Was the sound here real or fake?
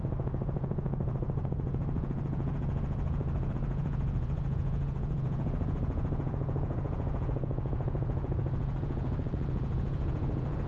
fake